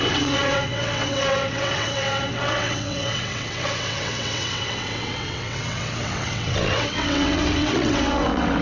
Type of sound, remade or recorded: remade